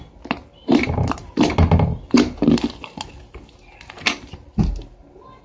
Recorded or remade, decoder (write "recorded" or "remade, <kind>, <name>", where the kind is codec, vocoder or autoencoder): recorded